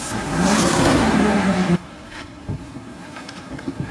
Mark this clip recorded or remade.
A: remade